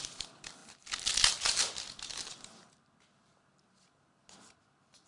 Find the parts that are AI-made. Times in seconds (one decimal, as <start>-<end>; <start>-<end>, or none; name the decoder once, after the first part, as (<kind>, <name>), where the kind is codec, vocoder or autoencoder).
none